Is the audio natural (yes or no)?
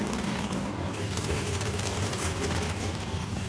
no